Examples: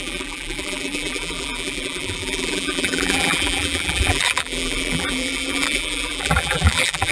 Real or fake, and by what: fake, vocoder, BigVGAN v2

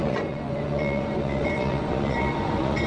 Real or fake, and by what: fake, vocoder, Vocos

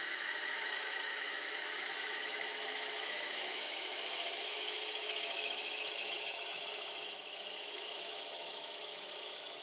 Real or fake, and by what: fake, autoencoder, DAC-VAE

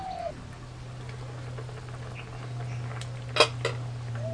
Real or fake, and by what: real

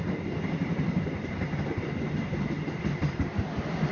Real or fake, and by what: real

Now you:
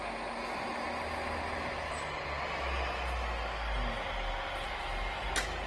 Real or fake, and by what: real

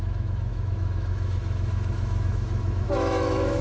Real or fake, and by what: fake, autoencoder, DAC-VAE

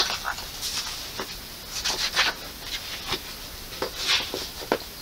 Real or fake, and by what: real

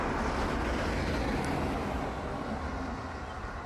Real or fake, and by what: real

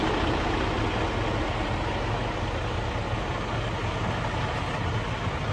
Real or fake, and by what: real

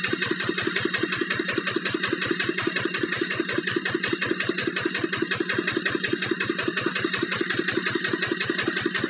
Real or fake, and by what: real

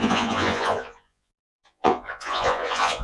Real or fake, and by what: fake, vocoder, Vocos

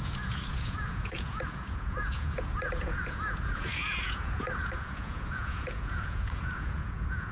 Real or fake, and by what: fake, vocoder, Vocos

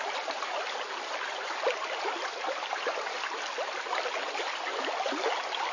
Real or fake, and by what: real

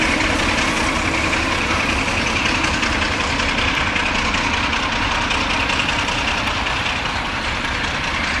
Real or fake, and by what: real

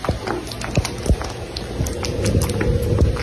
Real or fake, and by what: real